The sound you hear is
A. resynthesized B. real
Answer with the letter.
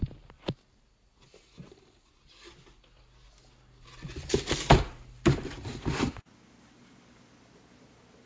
B